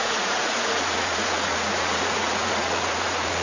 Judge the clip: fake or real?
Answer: fake